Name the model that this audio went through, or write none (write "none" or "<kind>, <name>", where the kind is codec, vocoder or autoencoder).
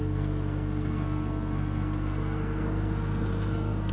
codec, SNAC